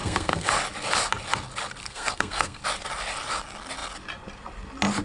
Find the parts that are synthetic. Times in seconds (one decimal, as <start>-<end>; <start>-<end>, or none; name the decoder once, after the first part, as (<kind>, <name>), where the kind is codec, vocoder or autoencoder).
0.0-0.5 (codec, SNAC); 1.8-2.6